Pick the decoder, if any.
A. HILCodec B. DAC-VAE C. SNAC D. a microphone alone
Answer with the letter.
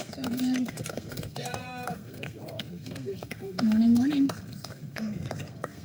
C